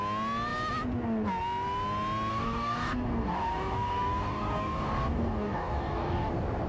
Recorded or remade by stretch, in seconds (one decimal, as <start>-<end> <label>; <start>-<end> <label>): 0.0-2.3 recorded; 2.3-6.3 remade; 6.3-6.7 recorded